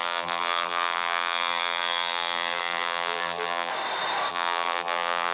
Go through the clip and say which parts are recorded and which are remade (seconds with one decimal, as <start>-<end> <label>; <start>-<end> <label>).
0.0-3.7 remade; 3.7-4.3 recorded; 4.3-5.3 remade